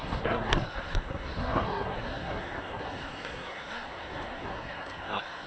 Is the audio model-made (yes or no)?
yes